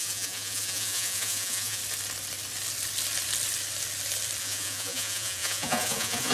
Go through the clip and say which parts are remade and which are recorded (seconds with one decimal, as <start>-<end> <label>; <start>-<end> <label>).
0.0-1.8 remade; 1.8-4.4 recorded; 4.4-6.3 remade